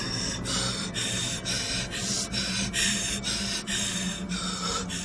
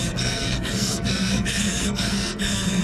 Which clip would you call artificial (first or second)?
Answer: second